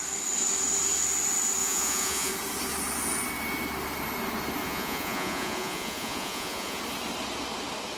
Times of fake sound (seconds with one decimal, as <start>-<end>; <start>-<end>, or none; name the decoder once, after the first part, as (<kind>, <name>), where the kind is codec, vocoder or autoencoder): 1.6-2.3 (vocoder, Vocos); 4.6-6.8